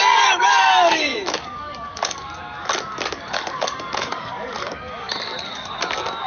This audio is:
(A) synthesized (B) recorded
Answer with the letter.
A